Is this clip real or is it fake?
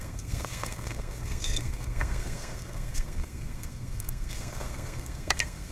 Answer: fake